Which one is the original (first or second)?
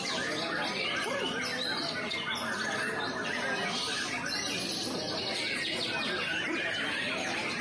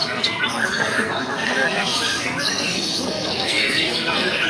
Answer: first